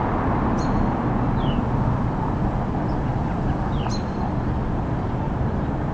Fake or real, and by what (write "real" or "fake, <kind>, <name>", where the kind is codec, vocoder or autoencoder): real